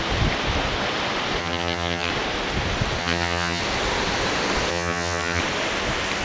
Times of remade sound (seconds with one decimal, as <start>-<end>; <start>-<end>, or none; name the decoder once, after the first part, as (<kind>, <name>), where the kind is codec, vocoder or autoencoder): 1.4-2.1 (vocoder, HiFi-GAN); 3.0-3.6; 4.7-5.4